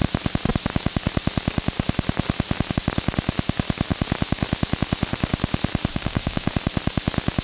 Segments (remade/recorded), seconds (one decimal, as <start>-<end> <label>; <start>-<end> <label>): 0.0-5.9 recorded; 5.9-6.5 remade; 6.5-7.4 recorded